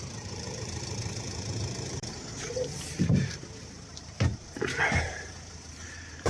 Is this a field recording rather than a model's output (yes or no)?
no